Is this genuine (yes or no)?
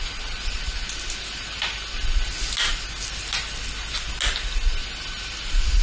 yes